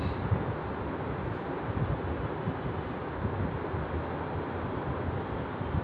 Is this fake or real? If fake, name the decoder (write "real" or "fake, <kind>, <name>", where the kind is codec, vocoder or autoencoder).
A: real